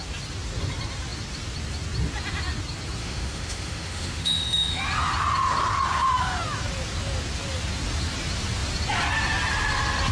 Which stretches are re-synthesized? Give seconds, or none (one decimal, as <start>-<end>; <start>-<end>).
3.0-4.8